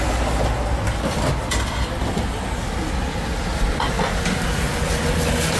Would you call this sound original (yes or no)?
yes